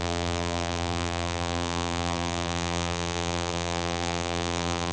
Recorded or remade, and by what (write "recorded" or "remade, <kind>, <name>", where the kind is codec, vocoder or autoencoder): remade, vocoder, BigVGAN v2